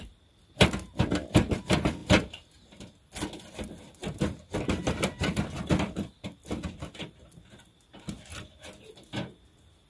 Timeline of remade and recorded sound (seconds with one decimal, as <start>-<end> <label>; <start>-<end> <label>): 0.0-9.9 recorded